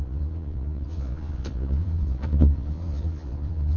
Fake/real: fake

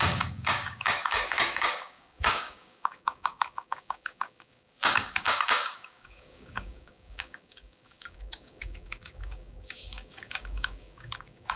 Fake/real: fake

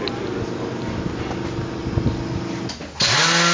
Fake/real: real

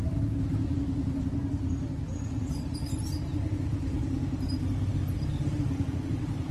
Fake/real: real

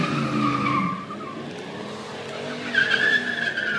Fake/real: real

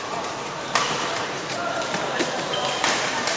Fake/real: fake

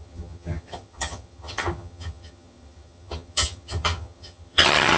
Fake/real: fake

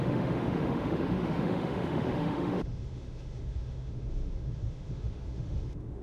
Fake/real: fake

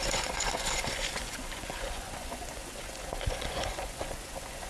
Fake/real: fake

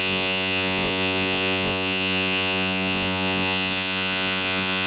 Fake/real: fake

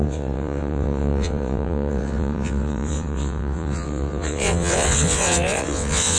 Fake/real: fake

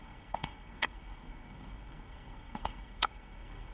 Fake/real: fake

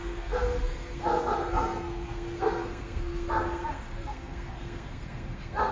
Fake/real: fake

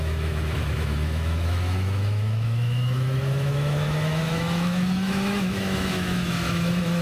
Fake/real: fake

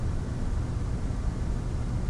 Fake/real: real